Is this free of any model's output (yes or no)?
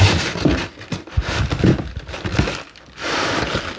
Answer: yes